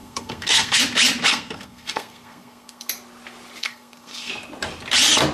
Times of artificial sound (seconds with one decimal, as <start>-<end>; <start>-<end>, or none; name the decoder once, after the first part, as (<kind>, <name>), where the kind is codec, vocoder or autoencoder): 0.0-0.8 (codec, SNAC); 1.3-2.9; 3.6-4.3